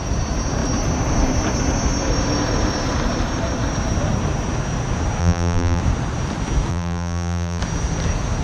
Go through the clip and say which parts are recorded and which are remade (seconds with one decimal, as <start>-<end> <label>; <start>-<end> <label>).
0.0-5.2 recorded; 5.2-5.8 remade; 5.8-6.7 recorded; 6.7-7.6 remade; 7.6-8.4 recorded